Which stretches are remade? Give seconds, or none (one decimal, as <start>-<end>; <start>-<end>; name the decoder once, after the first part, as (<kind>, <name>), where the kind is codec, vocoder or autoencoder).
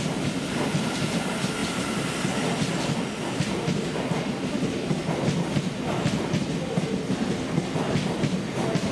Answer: none